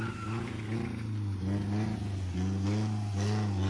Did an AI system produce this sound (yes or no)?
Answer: no